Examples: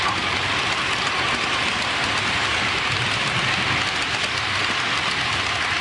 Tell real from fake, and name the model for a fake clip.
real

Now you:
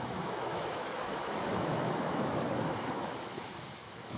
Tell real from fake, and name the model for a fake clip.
fake, autoencoder, DAC-VAE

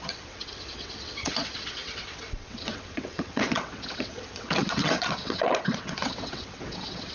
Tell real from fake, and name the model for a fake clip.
fake, vocoder, WaveNeXt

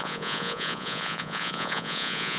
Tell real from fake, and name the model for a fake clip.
fake, vocoder, Vocos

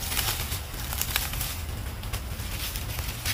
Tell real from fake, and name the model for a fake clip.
real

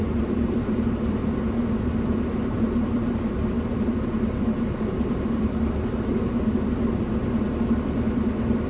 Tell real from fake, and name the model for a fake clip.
fake, vocoder, BigVGAN v2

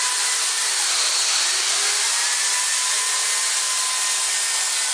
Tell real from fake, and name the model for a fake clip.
real